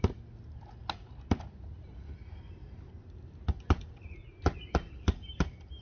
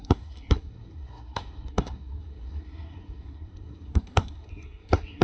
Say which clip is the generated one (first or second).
second